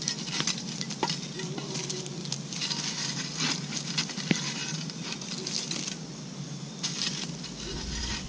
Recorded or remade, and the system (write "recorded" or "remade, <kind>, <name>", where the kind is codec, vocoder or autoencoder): recorded